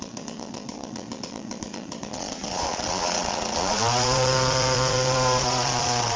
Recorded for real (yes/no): no